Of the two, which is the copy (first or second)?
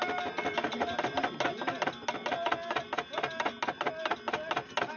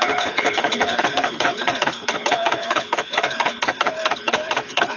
second